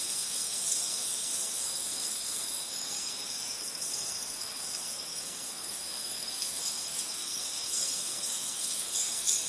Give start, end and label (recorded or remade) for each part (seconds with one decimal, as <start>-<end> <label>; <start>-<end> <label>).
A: 0.0-9.5 remade